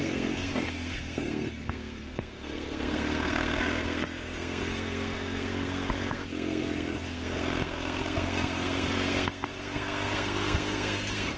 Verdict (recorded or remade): remade